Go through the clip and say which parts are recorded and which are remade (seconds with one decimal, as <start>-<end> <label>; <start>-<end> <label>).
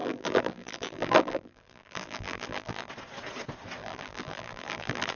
0.0-2.9 remade; 2.9-3.8 recorded; 3.8-5.2 remade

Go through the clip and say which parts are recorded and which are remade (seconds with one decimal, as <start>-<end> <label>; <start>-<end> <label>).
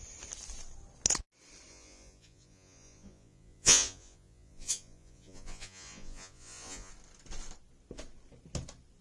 0.0-1.7 recorded; 1.7-6.9 remade; 6.9-9.0 recorded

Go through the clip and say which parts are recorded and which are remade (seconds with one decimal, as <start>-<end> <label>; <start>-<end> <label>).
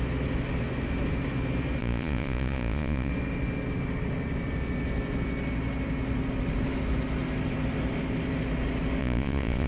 0.0-1.8 recorded; 1.8-3.1 remade; 3.1-9.0 recorded; 9.0-9.7 remade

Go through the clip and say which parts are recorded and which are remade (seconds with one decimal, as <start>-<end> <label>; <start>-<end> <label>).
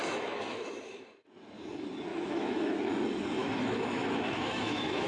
0.0-0.7 remade; 0.7-2.1 recorded; 2.1-2.9 remade; 2.9-3.4 recorded; 3.4-5.1 remade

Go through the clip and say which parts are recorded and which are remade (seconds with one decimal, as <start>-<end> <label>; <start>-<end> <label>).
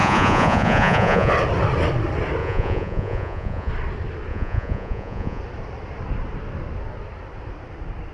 0.0-1.3 remade; 1.3-2.4 recorded; 2.4-3.7 remade; 3.7-4.3 recorded; 4.3-5.4 remade; 5.4-8.1 recorded